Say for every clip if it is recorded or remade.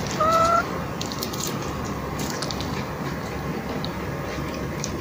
recorded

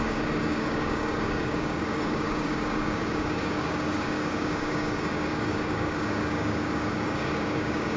remade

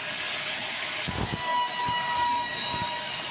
remade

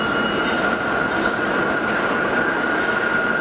recorded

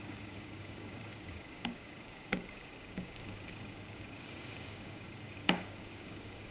remade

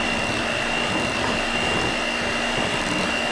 recorded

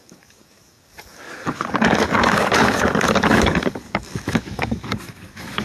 remade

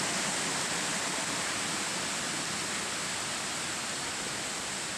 recorded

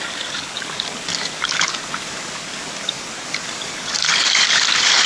remade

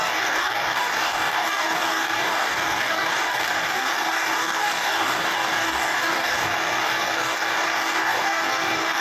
remade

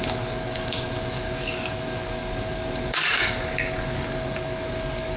remade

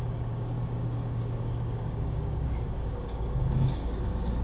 remade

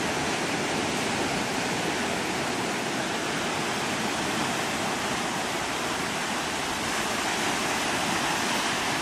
recorded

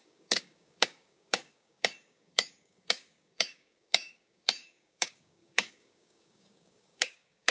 remade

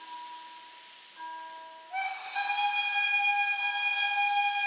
recorded